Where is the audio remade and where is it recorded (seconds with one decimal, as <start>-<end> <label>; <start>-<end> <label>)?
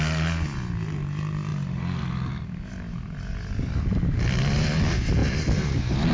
0.0-6.1 recorded